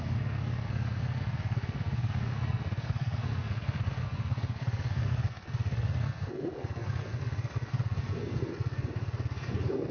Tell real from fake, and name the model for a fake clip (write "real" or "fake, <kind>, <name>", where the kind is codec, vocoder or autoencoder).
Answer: fake, codec, SNAC